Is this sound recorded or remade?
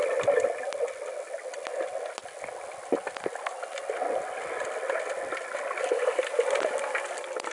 recorded